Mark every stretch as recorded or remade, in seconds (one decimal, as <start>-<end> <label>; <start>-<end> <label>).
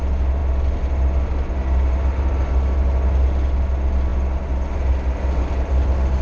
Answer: 0.0-6.2 recorded